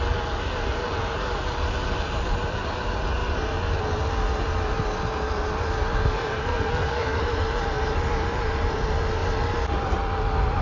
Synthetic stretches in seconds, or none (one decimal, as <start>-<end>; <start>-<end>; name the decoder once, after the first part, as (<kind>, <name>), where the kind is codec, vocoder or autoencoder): 6.0-7.2 (codec, SNAC)